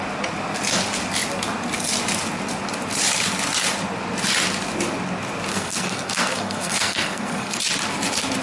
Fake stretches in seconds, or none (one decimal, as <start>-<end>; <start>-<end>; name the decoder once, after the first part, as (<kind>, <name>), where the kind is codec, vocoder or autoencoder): 5.5-7.6 (codec, SNAC)